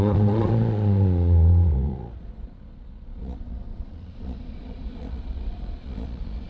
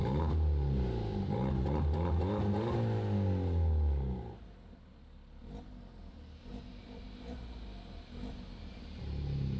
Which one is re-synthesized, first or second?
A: first